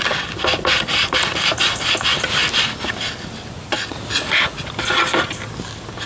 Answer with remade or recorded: recorded